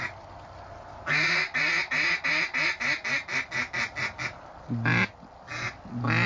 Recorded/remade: recorded